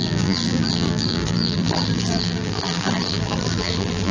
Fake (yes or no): yes